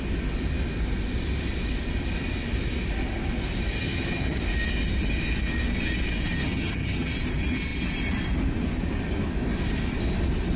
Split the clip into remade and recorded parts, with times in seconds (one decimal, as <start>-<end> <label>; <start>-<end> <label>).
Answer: 0.0-3.8 recorded; 3.8-4.4 remade; 4.4-6.4 recorded; 6.4-7.1 remade; 7.1-10.6 recorded